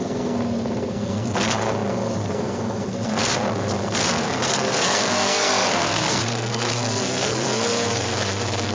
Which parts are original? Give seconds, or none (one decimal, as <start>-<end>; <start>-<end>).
none